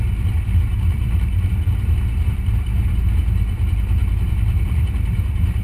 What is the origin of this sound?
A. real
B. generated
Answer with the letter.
B